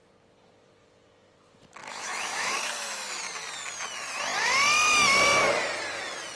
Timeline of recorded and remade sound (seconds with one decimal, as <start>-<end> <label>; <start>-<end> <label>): 0.0-1.8 recorded; 1.8-3.2 remade; 3.2-6.4 recorded